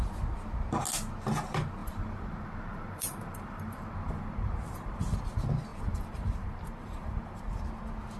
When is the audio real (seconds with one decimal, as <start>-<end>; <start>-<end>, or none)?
0.0-1.8; 5.0-5.7; 7.6-8.2